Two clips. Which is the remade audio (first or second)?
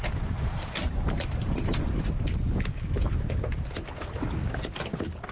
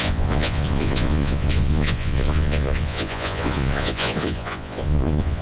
second